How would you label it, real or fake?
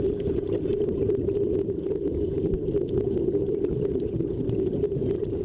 fake